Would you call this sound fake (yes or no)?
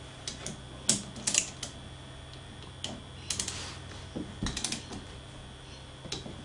no